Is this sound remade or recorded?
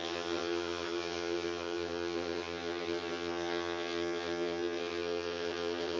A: remade